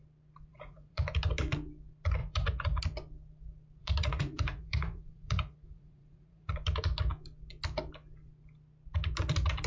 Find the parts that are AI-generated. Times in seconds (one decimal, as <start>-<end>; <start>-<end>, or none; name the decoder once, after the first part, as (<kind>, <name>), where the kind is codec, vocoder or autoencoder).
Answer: 0.5-1.1 (vocoder, Vocos); 2.2-2.8; 3.8-6.5